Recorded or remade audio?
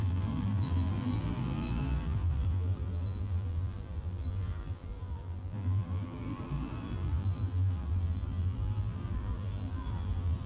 remade